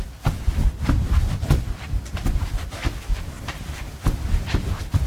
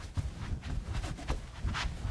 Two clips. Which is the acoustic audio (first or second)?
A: second